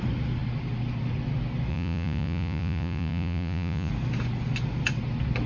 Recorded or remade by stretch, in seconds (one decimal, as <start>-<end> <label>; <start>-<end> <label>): 0.0-1.7 recorded; 1.7-3.9 remade; 3.9-5.5 recorded